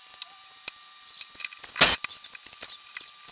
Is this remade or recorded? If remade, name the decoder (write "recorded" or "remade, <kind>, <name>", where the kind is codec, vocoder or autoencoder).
recorded